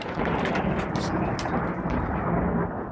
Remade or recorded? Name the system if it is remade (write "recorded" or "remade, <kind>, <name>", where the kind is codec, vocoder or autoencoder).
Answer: recorded